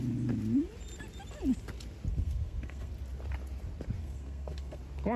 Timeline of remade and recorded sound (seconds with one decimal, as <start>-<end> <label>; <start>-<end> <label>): 0.0-2.1 recorded; 2.1-2.9 remade; 2.9-4.0 recorded; 4.0-4.8 remade; 4.8-5.2 recorded